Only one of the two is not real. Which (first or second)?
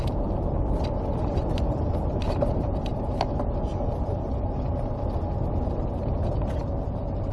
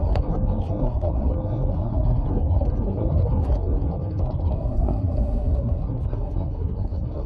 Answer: second